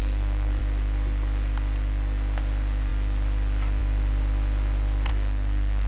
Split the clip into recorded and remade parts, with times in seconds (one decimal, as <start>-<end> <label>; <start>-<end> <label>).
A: 0.0-0.6 remade; 0.6-5.1 recorded; 5.1-5.9 remade